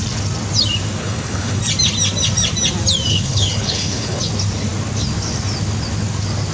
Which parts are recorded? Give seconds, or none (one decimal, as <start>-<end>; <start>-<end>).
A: 0.0-1.0; 1.6-3.1; 4.2-6.5